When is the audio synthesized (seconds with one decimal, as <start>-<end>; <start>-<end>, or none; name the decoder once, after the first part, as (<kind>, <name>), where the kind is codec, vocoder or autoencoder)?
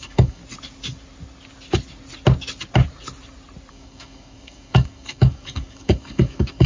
0.0-0.4 (codec, DAC); 3.7-6.7